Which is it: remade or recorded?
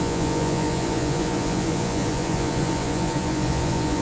remade